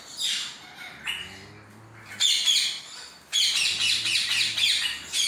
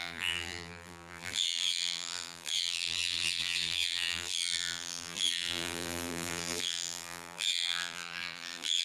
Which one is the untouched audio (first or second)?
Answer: first